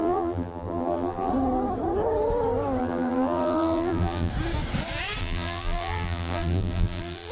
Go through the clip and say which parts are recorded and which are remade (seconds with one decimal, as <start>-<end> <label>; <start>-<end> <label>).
0.0-1.3 remade; 1.3-2.8 recorded; 2.8-4.3 remade; 4.3-5.2 recorded; 5.2-7.3 remade